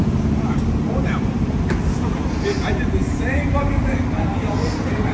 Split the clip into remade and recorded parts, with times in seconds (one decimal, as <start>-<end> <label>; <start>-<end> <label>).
0.0-5.1 recorded